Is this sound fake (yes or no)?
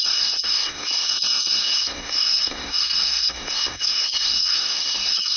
yes